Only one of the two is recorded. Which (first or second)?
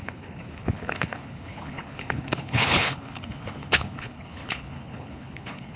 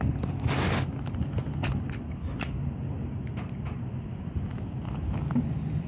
second